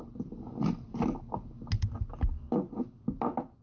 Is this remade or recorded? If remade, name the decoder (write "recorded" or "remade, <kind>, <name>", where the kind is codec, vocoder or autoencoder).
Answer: recorded